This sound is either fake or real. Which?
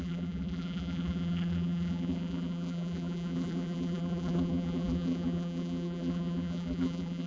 fake